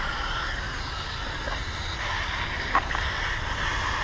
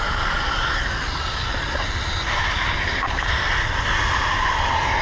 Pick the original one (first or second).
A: first